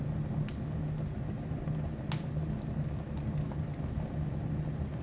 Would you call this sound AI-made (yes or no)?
no